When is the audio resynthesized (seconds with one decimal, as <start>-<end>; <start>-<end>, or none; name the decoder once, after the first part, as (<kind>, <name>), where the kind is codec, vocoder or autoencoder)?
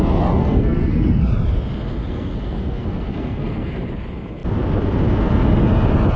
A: 0.4-1.3 (codec, SNAC); 2.0-3.9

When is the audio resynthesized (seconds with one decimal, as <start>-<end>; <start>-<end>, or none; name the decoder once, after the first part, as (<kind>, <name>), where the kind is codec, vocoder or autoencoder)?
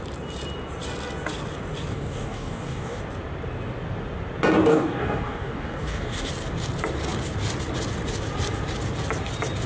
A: 1.9-3.0 (codec, DAC); 4.7-6.3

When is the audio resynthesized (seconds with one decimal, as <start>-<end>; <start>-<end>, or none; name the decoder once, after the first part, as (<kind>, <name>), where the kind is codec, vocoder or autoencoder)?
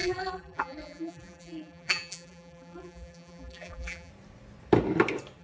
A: 0.0-4.1 (vocoder, BigVGAN v2)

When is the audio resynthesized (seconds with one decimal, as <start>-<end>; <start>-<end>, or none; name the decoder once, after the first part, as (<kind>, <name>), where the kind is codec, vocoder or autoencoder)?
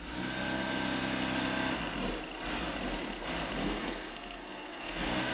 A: 3.6-5.3 (codec, SNAC)